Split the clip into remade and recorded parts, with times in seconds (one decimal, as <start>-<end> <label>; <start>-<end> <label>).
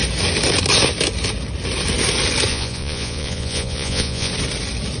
0.0-2.5 recorded; 2.5-4.3 remade; 4.3-5.0 recorded